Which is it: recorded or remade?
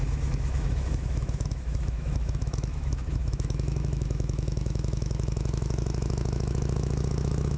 remade